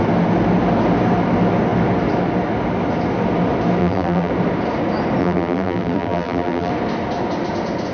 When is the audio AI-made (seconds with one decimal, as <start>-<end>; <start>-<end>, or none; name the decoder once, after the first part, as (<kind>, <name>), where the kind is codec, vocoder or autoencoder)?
3.8-4.3 (vocoder, BigVGAN v2); 5.2-6.7